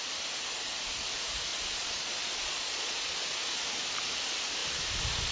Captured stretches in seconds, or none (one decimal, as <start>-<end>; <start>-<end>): 0.0-1.5; 3.5-5.3